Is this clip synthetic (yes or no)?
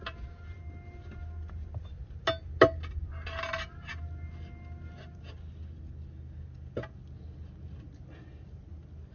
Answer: no